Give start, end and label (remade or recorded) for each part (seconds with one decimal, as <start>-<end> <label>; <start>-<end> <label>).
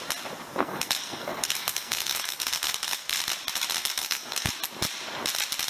0.0-0.6 recorded; 0.6-3.2 remade; 3.2-3.8 recorded; 3.8-4.5 remade; 4.5-5.7 recorded